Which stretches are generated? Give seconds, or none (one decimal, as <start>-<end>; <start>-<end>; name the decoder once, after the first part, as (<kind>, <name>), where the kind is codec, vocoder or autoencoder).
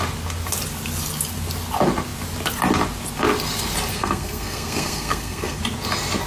3.9-5.6 (codec, SNAC)